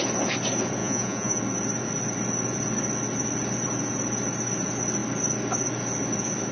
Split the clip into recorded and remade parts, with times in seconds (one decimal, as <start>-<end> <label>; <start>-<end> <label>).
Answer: 0.0-0.8 recorded; 0.8-1.4 remade; 1.4-6.5 recorded